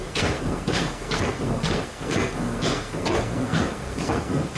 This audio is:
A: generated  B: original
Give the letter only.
A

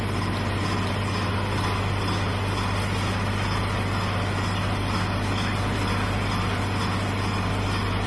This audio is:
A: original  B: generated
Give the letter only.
A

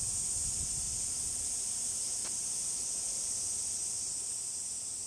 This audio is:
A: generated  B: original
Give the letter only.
B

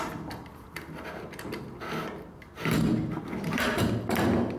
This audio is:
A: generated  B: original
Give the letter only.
B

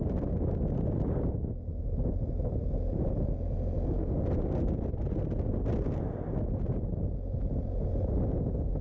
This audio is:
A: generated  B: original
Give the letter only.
B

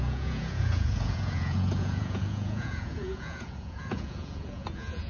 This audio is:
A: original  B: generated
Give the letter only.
B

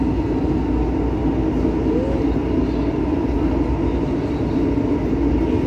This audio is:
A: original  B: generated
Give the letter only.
A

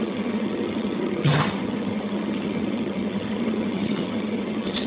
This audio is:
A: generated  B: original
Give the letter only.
A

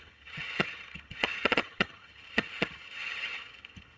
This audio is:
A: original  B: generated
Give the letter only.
B